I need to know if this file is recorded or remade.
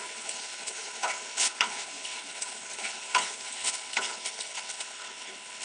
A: remade